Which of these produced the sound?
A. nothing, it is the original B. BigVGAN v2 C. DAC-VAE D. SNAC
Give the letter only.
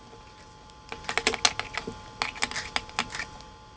A